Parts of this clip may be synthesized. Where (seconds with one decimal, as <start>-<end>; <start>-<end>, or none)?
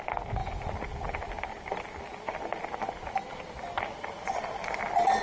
0.4-1.7; 3.0-3.6